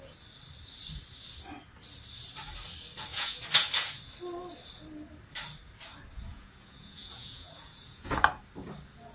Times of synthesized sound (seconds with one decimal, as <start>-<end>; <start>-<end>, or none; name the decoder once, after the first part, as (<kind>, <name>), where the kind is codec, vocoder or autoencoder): 3.1-4.0 (vocoder, Vocos); 6.3-8.1